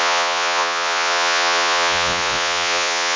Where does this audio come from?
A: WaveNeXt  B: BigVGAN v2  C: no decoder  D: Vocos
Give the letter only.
D